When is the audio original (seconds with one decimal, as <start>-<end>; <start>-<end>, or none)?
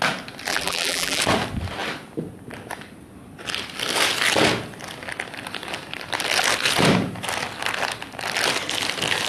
0.0-0.5; 1.2-9.3